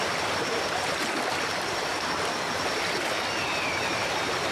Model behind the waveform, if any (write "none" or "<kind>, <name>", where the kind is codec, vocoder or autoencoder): none